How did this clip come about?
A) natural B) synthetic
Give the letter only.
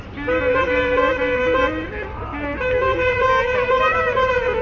A